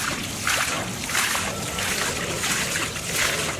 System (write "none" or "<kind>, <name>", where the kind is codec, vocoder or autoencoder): none